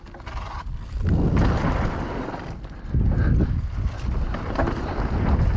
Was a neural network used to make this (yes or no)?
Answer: no